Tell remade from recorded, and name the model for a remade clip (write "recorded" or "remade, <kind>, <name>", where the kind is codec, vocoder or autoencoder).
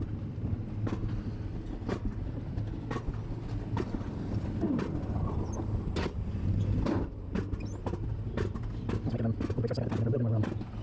recorded